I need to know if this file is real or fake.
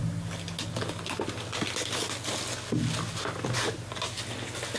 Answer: real